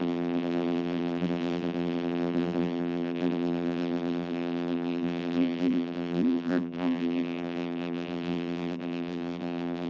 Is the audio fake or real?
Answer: fake